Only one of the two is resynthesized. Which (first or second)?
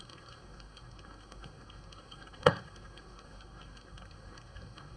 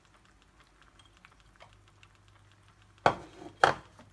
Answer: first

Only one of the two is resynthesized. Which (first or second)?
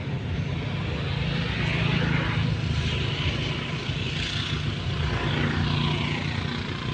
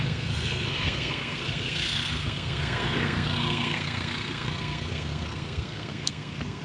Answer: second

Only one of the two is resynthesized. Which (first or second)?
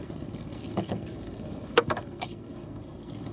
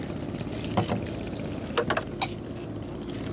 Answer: first